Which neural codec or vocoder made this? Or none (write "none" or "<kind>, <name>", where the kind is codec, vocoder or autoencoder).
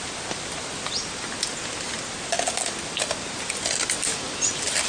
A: none